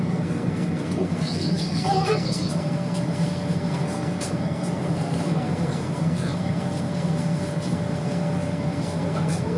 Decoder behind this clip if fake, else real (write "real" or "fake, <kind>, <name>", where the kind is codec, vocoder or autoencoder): fake, codec, SNAC